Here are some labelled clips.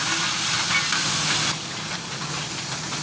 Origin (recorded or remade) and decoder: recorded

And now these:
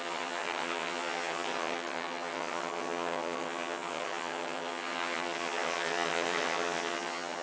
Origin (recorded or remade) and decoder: remade, vocoder, HiFi-GAN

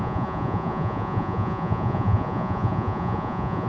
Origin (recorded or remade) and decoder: remade, vocoder, Vocos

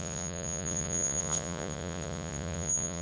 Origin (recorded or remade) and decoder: remade, vocoder, Vocos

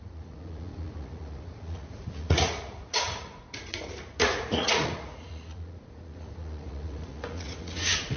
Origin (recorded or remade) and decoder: remade, vocoder, Vocos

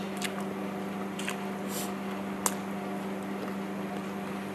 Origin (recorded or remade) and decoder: recorded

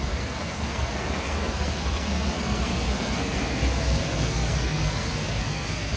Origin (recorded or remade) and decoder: remade, codec, SNAC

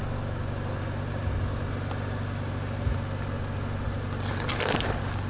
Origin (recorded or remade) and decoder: recorded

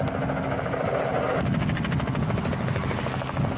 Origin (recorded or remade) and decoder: recorded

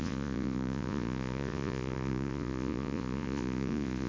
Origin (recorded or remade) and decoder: remade, vocoder, Vocos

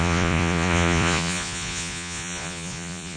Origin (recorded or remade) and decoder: remade, vocoder, Vocos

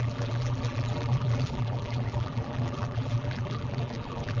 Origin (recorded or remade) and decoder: remade, vocoder, BigVGAN v2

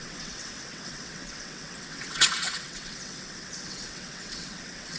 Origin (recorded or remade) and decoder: remade, vocoder, WaveNeXt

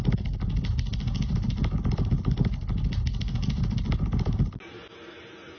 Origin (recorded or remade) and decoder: recorded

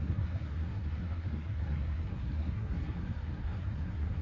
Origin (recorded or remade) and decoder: remade, codec, SNAC